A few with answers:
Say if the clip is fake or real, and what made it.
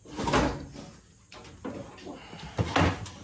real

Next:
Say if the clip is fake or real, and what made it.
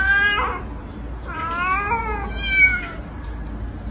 real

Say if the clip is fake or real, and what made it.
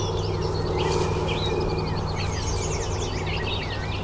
real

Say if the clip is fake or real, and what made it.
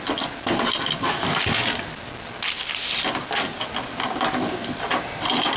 real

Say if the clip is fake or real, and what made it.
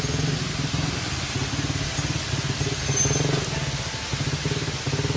real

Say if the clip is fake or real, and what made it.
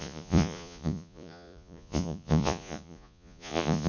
fake, vocoder, Vocos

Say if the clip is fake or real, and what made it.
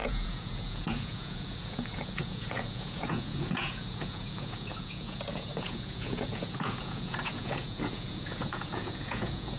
fake, vocoder, Vocos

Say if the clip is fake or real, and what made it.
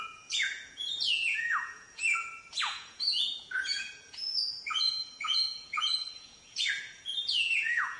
fake, vocoder, Vocos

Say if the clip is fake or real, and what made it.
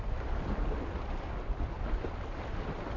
real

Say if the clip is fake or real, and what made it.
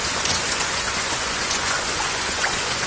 fake, vocoder, Vocos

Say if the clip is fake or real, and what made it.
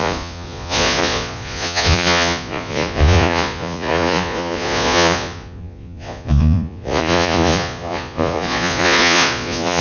fake, vocoder, Vocos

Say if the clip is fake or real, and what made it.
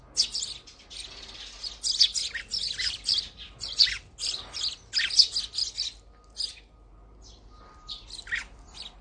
real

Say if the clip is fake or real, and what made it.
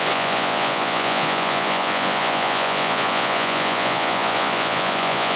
fake, vocoder, Vocos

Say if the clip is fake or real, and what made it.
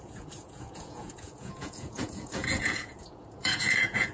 fake, vocoder, Vocos